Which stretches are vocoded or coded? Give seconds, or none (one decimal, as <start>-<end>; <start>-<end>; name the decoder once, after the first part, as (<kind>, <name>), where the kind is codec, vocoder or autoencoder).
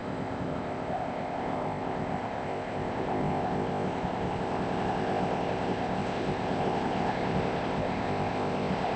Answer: 0.0-9.0 (codec, ZipCodec)